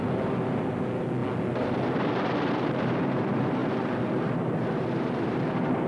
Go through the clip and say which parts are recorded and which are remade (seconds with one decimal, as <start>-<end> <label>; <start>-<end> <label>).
0.0-5.9 recorded